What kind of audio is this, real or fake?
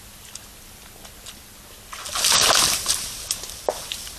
real